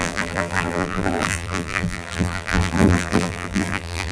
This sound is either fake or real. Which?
fake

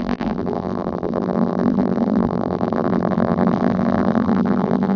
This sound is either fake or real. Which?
fake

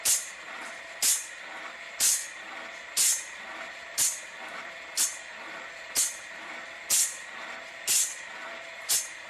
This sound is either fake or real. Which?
fake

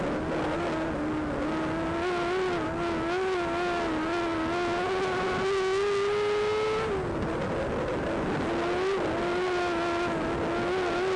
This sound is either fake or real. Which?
real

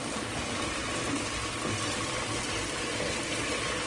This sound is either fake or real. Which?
real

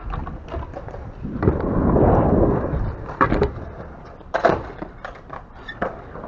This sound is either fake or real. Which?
fake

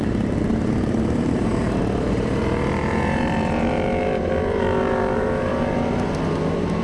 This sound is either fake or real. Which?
fake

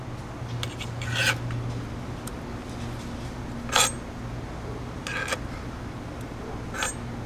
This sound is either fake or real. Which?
real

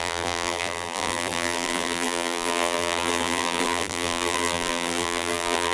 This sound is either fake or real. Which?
fake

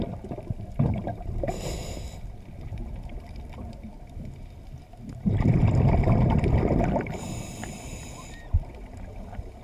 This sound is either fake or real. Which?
fake